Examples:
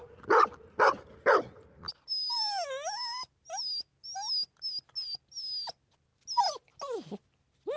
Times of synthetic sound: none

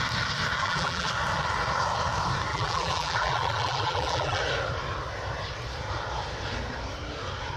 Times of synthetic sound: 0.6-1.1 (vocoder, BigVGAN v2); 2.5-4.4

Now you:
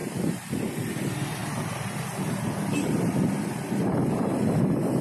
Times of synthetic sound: 0.0-0.6 (vocoder, BigVGAN v2); 1.4-4.4

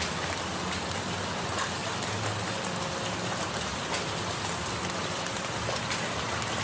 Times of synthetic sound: none

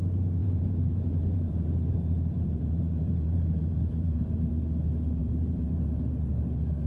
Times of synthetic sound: 0.4-4.5 (vocoder, BigVGAN v2); 5.2-5.8

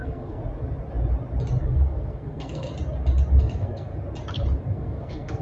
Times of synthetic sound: 0.0-0.4 (codec, SNAC); 1.6-2.7; 3.4-3.9; 4.6-5.4

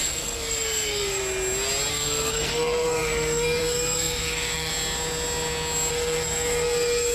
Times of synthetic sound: 0.0-1.2 (codec, SNAC); 1.9-4.7; 5.9-7.1

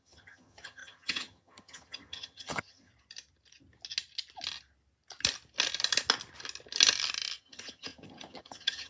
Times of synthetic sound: 0.0-2.9 (vocoder, HiFi-GAN); 7.4-8.9